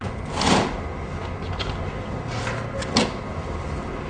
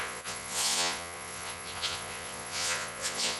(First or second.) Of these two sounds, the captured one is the first